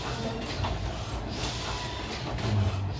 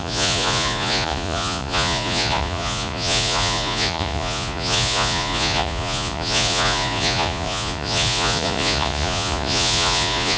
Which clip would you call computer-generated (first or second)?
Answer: second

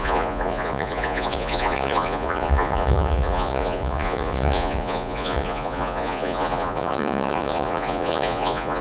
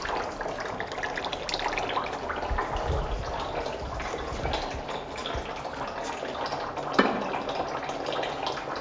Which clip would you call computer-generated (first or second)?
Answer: first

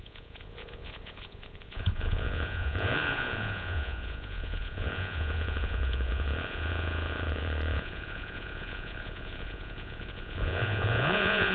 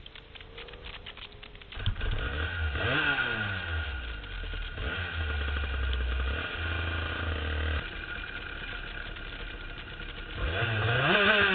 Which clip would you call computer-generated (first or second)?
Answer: first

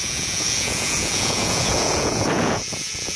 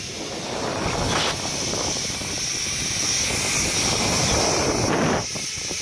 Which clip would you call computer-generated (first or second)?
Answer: first